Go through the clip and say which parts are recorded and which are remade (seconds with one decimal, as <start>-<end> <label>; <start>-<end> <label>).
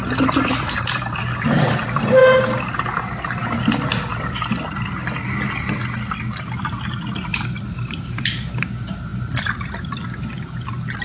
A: 0.0-7.3 recorded; 7.3-8.7 remade; 8.7-11.0 recorded